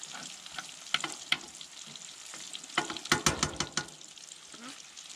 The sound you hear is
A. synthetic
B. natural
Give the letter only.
B